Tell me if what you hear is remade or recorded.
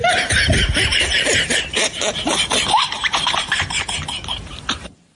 remade